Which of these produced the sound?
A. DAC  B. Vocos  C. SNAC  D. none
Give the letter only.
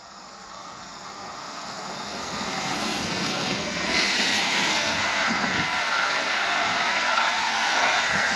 C